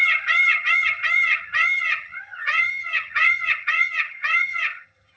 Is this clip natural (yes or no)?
no